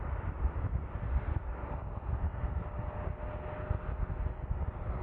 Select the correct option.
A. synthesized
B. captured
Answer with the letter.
B